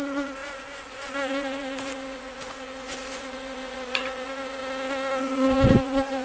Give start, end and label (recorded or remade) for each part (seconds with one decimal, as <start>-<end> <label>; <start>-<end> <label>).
0.0-4.6 remade; 4.6-5.2 recorded; 5.2-6.2 remade